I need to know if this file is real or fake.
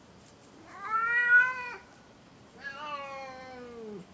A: real